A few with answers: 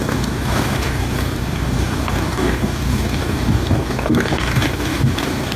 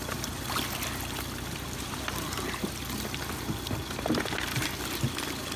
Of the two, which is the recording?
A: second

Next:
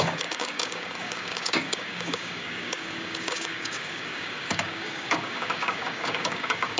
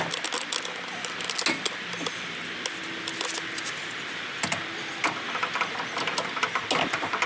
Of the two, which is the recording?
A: second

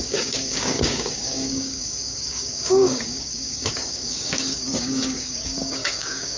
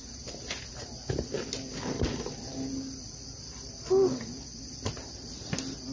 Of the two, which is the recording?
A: second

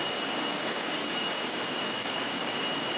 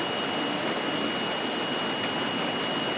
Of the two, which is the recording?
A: second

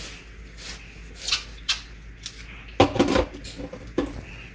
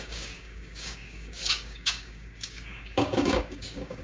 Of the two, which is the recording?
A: first